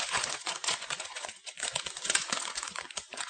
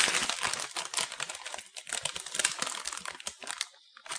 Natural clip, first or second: second